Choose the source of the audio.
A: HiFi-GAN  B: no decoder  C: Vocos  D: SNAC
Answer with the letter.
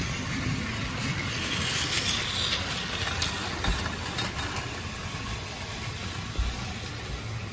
B